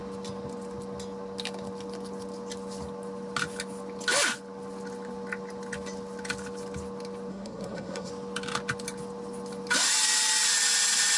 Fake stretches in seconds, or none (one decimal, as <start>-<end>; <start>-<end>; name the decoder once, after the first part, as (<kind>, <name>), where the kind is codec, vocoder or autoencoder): 7.3-8.1 (codec, SNAC)

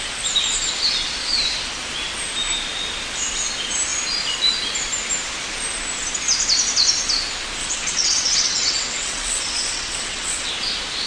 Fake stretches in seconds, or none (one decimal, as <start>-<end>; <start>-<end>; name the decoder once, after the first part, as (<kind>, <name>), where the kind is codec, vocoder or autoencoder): 7.6-10.5 (vocoder, WaveNeXt)

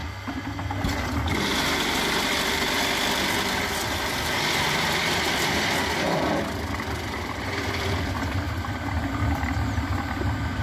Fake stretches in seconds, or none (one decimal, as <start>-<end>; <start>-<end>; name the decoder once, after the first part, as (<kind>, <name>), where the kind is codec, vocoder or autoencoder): 2.1-10.6 (vocoder, BigVGAN v2)

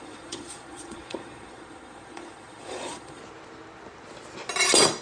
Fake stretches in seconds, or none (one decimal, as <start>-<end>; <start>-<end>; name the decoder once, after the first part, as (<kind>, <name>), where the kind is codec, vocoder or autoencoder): 0.0-3.2 (vocoder, Vocos)

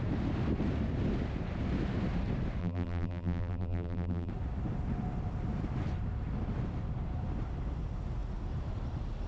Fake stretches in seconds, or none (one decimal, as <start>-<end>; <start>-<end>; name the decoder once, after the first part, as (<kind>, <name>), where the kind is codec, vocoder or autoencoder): 2.6-4.3 (vocoder, BigVGAN v2)

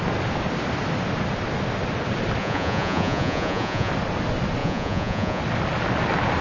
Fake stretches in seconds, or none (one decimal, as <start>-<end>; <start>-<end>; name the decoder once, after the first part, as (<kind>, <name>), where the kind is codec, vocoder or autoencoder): 2.4-3.9 (vocoder, Vocos); 4.6-5.4

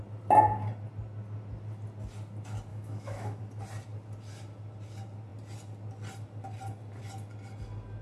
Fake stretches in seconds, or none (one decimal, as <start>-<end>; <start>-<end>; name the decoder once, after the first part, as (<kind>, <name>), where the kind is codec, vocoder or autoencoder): 2.7-3.4 (autoencoder, DAC-VAE)